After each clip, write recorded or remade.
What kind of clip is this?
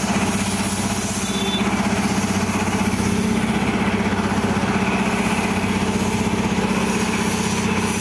recorded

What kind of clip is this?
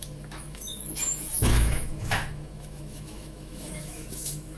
remade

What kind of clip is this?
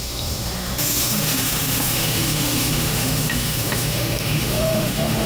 remade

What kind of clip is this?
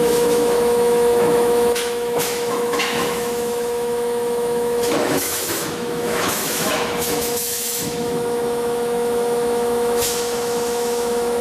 remade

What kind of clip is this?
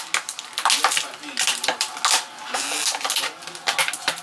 recorded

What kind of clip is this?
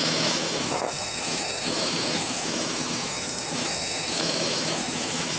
remade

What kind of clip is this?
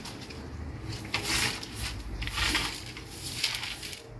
recorded